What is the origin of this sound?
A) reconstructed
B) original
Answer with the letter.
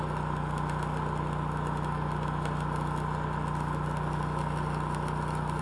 B